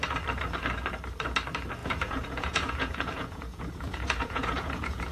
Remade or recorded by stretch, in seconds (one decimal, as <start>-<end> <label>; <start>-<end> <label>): 0.0-1.8 recorded; 1.8-5.1 remade